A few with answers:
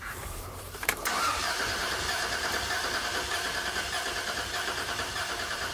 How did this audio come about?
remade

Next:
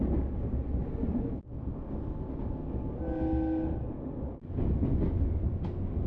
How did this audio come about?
recorded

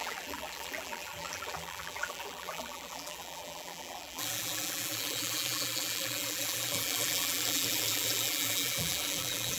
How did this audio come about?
remade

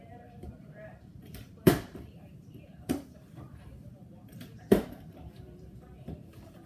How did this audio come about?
remade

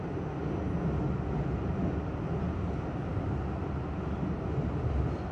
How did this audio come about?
recorded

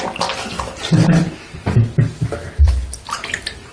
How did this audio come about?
recorded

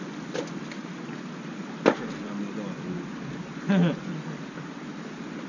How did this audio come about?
recorded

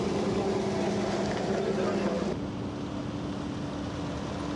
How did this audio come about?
recorded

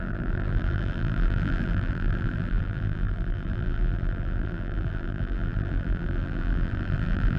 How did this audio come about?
remade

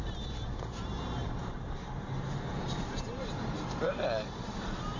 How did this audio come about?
remade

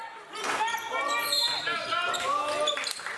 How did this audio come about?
recorded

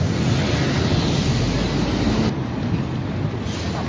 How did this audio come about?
recorded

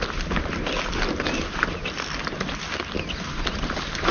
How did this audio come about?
recorded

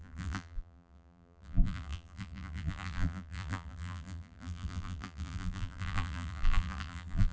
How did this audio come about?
remade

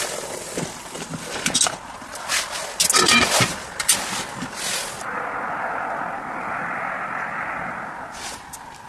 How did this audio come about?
recorded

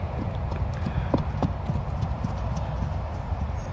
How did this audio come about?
recorded